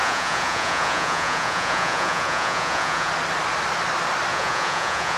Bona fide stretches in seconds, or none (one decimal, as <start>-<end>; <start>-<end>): 3.1-4.3